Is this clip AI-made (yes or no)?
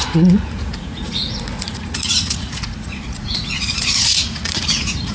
yes